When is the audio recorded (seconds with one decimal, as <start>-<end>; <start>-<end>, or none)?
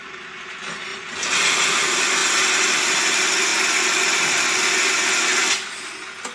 0.0-0.9; 1.5-2.2; 3.1-3.5; 4.4-6.3